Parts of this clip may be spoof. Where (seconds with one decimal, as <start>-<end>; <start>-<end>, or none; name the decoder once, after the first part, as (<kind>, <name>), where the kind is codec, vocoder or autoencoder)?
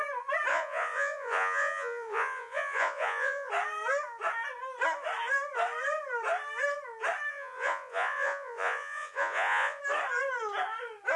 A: 0.5-3.5 (vocoder, Vocos); 7.3-9.8